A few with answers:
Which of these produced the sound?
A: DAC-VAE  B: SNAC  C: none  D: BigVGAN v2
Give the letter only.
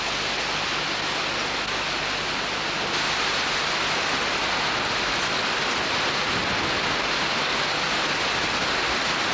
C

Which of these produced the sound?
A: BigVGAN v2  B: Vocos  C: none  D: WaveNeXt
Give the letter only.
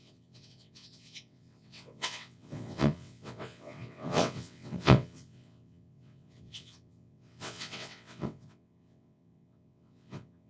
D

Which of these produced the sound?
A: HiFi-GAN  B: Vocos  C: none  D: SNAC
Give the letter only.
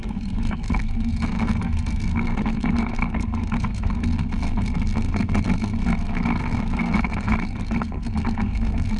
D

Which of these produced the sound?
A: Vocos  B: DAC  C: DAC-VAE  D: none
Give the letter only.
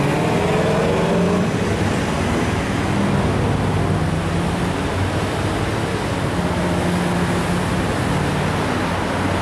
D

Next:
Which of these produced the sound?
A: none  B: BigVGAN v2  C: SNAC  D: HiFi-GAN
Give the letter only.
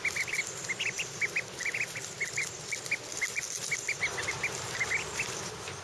A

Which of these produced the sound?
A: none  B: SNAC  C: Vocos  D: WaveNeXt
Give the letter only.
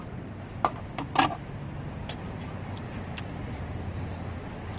A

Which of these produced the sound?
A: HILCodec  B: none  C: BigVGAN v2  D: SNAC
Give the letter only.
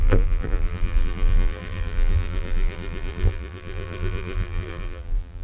C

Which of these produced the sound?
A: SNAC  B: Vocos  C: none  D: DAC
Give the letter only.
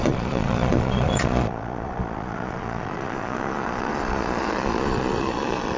B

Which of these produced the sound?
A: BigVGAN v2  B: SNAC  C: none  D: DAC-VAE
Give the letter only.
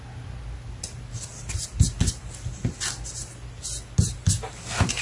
C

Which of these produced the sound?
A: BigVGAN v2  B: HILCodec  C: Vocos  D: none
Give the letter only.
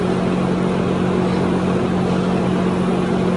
D